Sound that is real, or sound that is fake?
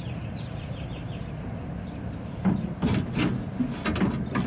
real